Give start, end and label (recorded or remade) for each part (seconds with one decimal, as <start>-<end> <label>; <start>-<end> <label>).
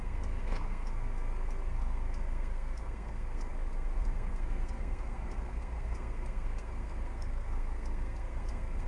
0.0-8.9 remade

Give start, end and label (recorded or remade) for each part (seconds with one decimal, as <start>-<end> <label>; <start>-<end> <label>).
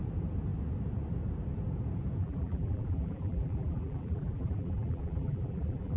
0.0-2.2 recorded; 2.2-6.0 remade